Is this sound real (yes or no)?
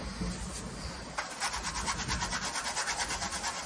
yes